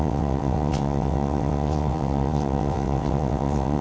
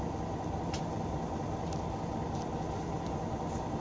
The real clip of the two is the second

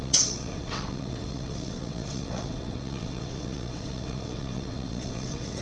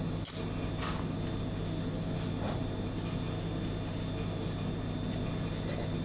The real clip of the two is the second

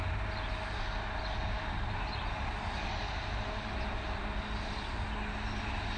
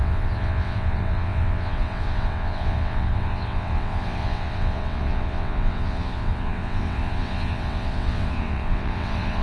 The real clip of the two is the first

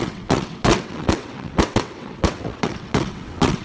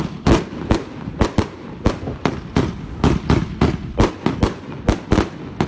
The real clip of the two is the second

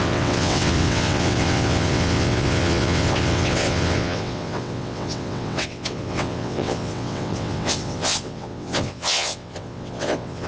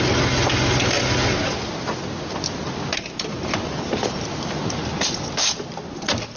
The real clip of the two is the second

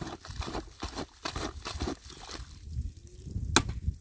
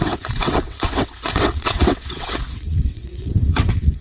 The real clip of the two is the first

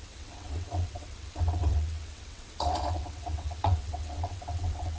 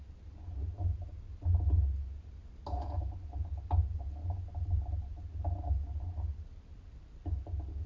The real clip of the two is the second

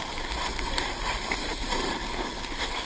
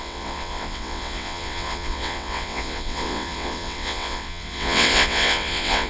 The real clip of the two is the first